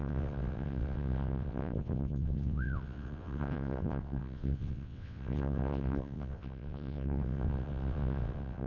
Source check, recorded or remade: remade